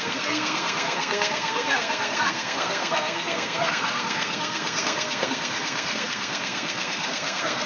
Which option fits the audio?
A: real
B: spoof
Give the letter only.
B